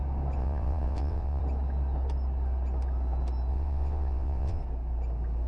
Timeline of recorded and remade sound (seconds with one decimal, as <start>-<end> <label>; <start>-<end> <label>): 0.0-0.4 recorded; 0.4-1.4 remade; 1.4-3.5 recorded; 3.5-4.6 remade; 4.6-5.5 recorded